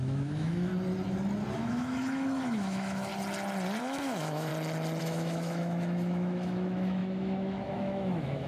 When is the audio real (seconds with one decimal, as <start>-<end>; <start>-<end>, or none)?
0.7-1.5; 3.1-3.8; 4.5-5.0